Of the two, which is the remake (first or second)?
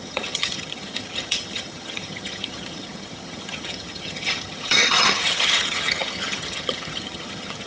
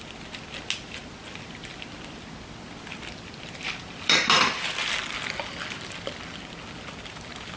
first